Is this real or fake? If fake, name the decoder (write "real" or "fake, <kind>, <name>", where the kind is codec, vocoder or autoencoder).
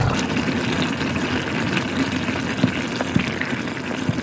real